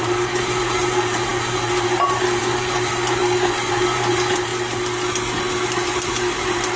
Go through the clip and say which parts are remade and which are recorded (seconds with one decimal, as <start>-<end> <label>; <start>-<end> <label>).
0.0-3.2 remade; 3.2-3.7 recorded; 3.7-4.5 remade; 4.5-5.5 recorded; 5.5-6.8 remade